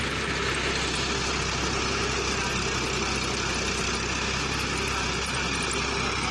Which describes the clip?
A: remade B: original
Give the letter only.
B